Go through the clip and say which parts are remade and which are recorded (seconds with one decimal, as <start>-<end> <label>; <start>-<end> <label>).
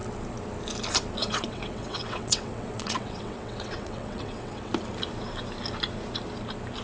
0.0-1.2 recorded; 1.2-4.7 remade; 4.7-6.8 recorded